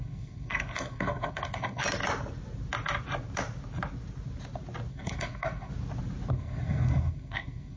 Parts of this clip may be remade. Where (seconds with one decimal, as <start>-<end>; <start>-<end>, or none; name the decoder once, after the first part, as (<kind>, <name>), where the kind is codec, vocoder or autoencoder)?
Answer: 0.0-1.8 (codec, SNAC); 4.9-5.7; 6.3-7.8